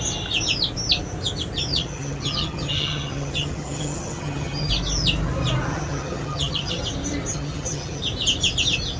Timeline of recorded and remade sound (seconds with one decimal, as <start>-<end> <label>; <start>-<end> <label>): 0.0-1.7 recorded; 1.7-4.7 remade; 4.7-5.7 recorded; 5.7-6.8 remade; 6.8-7.3 recorded; 7.3-8.0 remade; 8.0-9.0 recorded